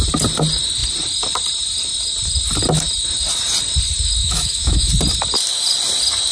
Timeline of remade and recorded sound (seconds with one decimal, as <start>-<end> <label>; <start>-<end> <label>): 0.0-4.2 recorded; 4.2-4.9 remade; 4.9-6.3 recorded